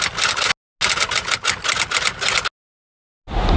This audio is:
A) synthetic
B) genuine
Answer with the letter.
B